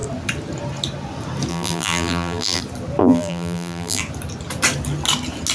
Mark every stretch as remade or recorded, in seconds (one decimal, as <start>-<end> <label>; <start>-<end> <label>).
0.0-1.5 recorded; 1.5-2.6 remade; 2.6-3.0 recorded; 3.0-4.0 remade; 4.0-5.5 recorded